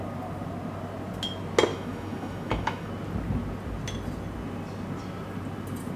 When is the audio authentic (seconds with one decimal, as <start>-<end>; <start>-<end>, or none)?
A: 0.0-1.7; 2.9-6.0